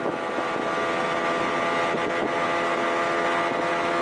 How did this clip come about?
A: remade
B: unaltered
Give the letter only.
B